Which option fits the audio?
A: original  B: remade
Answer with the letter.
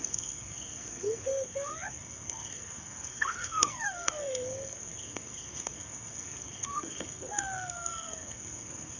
B